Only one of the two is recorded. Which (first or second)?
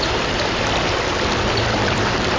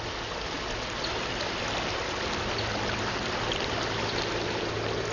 second